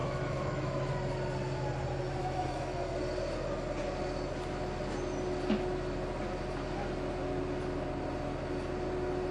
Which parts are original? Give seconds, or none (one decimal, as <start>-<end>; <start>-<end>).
0.9-2.2; 2.7-9.3